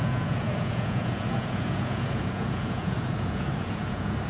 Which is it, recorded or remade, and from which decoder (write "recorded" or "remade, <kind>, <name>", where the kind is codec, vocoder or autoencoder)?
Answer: remade, vocoder, Vocos